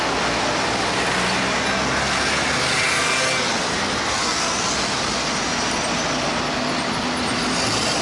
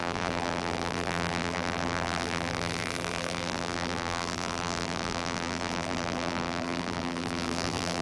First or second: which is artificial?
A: second